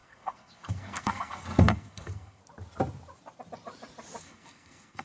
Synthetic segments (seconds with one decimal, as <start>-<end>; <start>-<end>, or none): 0.0-2.4; 4.2-5.0